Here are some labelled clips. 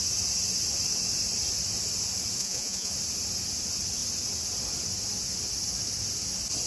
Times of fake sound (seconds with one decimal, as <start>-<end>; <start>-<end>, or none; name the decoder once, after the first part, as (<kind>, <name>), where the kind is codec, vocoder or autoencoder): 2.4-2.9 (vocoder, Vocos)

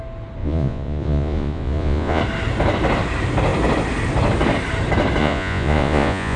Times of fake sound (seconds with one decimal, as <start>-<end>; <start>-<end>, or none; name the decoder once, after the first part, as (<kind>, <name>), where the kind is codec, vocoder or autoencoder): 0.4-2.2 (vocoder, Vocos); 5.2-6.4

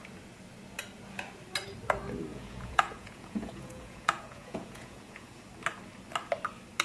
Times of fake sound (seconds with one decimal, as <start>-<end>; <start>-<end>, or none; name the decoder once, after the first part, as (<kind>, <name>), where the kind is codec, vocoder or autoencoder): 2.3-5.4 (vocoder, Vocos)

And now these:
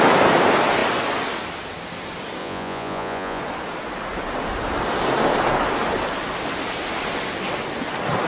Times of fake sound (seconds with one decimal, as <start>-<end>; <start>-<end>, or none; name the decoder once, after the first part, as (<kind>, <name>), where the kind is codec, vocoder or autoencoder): 2.4-3.4 (vocoder, Vocos)